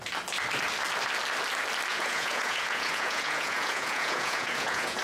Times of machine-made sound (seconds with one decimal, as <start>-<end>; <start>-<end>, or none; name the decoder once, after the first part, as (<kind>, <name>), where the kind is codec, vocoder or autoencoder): 1.9-5.0 (vocoder, Vocos)